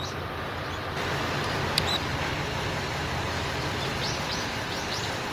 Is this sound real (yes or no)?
no